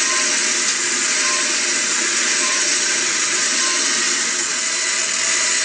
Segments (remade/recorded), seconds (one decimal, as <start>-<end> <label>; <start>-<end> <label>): 0.0-1.9 recorded; 1.9-3.6 remade; 3.6-5.6 recorded